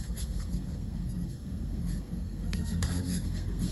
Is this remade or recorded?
remade